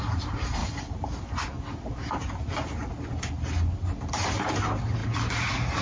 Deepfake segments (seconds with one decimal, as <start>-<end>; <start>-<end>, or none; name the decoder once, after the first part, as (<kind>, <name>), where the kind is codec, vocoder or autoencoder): 0.0-0.6 (vocoder, BigVGAN v2); 4.1-5.0